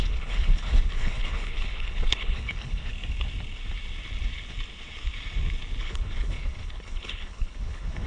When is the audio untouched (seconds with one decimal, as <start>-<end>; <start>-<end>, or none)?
2.9-5.8